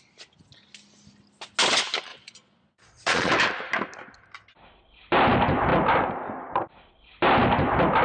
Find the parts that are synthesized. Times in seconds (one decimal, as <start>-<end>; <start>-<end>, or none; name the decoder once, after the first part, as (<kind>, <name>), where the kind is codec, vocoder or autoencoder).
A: 2.1-3.3 (vocoder, Vocos)